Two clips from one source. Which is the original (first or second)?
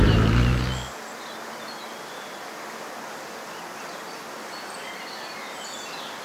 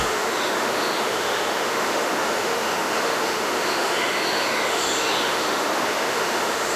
first